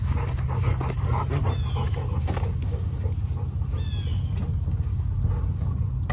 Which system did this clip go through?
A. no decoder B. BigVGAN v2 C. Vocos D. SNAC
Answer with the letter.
A